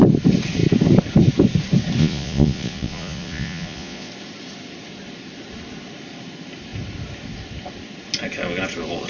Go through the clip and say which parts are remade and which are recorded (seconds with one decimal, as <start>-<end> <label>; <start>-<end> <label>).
0.0-2.0 recorded; 2.0-4.1 remade; 4.1-9.1 recorded